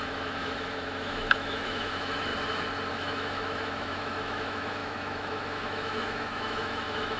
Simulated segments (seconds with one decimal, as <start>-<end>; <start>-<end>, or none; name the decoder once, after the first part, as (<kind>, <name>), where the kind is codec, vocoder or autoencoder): 0.0-2.3 (autoencoder, DAC-VAE); 2.9-7.2